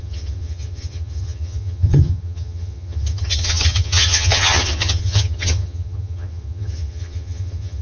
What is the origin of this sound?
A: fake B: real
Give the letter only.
A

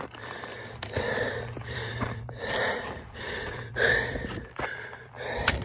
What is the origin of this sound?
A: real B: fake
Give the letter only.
B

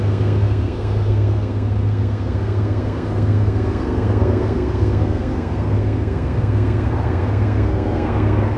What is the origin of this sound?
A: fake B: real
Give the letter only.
A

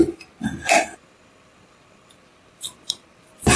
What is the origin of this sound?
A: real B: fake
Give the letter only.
B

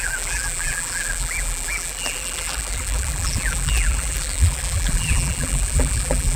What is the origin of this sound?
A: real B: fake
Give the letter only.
B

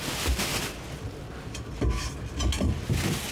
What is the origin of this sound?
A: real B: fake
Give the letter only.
A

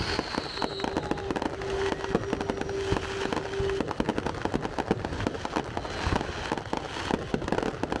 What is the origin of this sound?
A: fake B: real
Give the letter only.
B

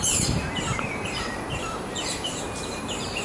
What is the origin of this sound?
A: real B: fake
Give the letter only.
B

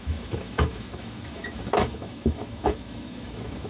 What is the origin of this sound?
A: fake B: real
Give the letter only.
A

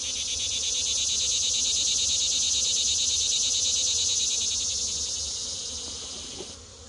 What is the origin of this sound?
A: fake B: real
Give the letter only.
B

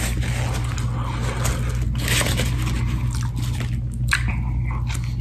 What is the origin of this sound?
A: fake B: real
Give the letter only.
B